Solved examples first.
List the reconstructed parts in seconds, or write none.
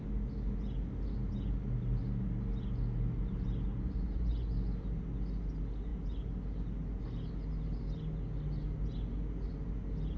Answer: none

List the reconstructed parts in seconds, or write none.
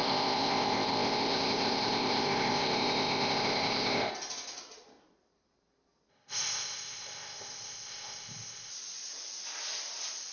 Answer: 0.0-4.1 (codec, ZipCodec); 6.1-8.7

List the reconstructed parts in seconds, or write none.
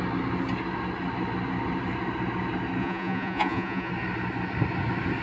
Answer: 2.8-3.9 (vocoder, Vocos)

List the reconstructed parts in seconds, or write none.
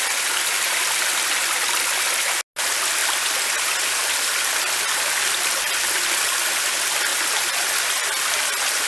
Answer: none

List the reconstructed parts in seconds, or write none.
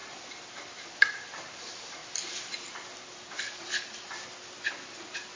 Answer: none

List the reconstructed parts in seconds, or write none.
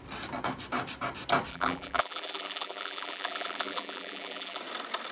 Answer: 1.5-4.6 (vocoder, BigVGAN v2)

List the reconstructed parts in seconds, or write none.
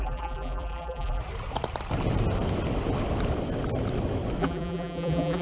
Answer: 0.0-1.2 (vocoder, BigVGAN v2); 4.4-5.4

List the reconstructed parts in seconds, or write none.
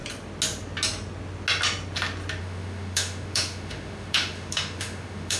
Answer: 2.4-5.4 (autoencoder, DAC-VAE)